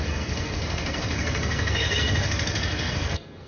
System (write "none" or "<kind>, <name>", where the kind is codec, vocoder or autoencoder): codec, SNAC